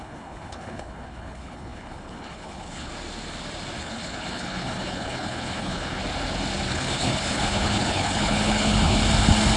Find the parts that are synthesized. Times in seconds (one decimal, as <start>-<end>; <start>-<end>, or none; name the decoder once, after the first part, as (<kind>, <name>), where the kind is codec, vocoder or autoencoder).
0.0-2.9 (codec, HILCodec); 3.8-6.0; 6.7-9.0

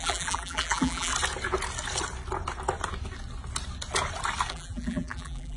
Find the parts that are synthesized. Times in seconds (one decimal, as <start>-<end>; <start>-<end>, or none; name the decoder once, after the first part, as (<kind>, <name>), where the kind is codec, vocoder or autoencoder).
0.0-1.1 (vocoder, BigVGAN v2); 4.5-5.6

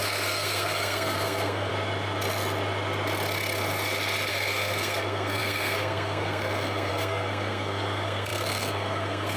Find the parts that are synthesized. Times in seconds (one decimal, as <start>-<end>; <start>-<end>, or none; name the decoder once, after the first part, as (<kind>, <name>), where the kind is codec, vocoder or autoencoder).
0.0-1.7 (codec, SNAC); 4.3-9.4

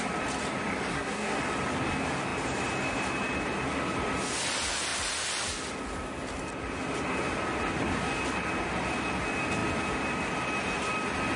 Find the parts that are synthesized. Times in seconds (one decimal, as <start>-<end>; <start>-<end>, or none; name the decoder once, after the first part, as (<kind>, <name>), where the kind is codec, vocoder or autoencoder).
0.9-1.4 (codec, SNAC)

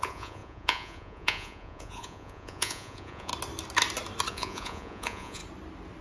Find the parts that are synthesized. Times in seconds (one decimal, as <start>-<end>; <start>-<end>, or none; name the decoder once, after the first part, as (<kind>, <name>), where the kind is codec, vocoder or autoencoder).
0.0-3.3 (vocoder, Vocos); 4.3-5.4

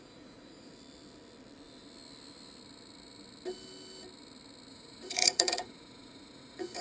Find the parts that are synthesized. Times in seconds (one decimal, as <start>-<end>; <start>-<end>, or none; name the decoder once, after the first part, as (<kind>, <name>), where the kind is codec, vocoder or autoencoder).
0.0-0.7 (vocoder, Vocos); 4.7-6.8

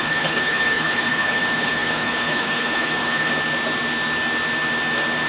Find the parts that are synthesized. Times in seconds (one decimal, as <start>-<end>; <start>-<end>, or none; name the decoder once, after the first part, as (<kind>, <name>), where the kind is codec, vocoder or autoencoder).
0.0-3.3 (codec, HILCodec)